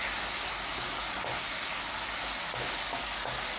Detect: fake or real real